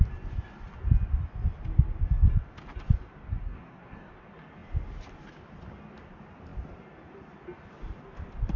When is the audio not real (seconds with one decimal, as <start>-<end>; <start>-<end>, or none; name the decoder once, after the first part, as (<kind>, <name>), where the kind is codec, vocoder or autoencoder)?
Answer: 3.3-4.1 (codec, SNAC)